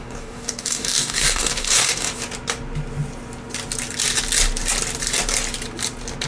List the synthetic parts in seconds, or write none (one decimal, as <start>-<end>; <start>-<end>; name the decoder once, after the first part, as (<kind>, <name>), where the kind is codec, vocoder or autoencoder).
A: 0.0-2.1 (codec, DAC)

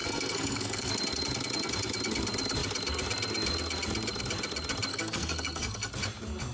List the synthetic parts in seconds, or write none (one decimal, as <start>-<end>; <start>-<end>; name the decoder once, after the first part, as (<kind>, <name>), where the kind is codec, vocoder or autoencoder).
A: 0.0-0.9 (codec, SNAC); 4.9-5.9

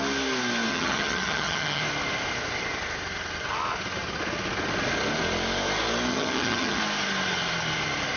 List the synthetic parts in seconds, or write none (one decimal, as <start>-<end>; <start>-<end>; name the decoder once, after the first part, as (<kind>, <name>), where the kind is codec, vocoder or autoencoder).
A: 0.7-1.8 (vocoder, HiFi-GAN); 6.1-6.8